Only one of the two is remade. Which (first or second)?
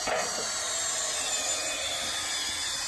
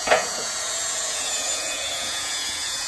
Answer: second